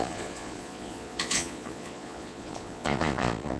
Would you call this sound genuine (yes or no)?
no